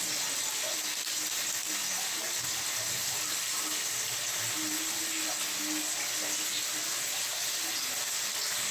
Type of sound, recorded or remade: recorded